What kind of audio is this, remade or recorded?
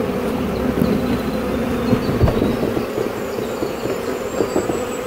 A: recorded